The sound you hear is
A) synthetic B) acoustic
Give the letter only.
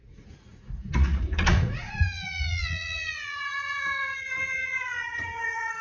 A